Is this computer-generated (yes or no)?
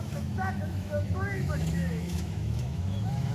yes